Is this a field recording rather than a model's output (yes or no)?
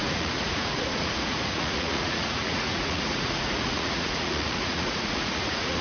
no